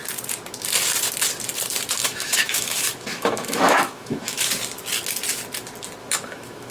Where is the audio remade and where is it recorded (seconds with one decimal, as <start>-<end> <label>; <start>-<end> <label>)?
0.0-2.0 recorded; 2.0-4.5 remade; 4.5-6.0 recorded; 6.0-6.7 remade

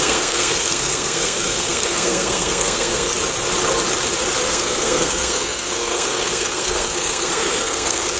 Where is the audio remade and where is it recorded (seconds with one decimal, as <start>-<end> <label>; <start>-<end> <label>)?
0.0-3.1 remade; 3.1-4.5 recorded; 4.5-8.2 remade

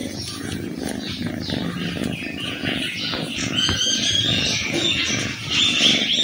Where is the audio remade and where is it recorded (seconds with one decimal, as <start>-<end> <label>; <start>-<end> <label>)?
0.0-1.3 remade; 1.3-2.0 recorded; 2.0-5.1 remade; 5.1-6.2 recorded